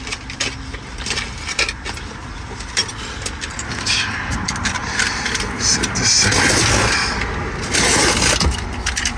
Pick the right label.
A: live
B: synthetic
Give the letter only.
A